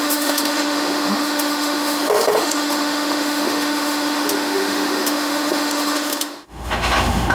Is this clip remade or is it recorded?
remade